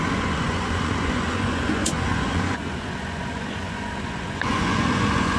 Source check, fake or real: fake